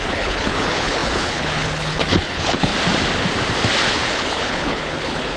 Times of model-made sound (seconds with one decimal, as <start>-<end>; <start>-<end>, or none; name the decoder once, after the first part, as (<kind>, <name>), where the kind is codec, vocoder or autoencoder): 0.0-2.7 (codec, HILCodec); 3.9-5.4